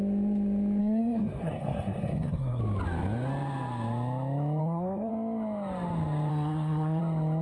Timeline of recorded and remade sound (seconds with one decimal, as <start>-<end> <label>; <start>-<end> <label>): 0.0-0.8 recorded; 0.8-2.6 remade; 2.6-4.6 recorded; 4.6-5.1 remade; 5.1-6.3 recorded; 6.3-7.0 remade; 7.0-7.4 recorded